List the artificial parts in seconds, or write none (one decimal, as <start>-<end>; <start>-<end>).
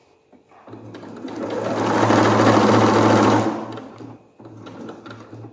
none